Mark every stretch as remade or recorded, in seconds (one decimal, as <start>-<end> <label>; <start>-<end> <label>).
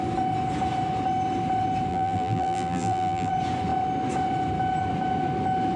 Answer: 0.0-1.9 recorded; 1.9-3.3 remade; 3.3-5.8 recorded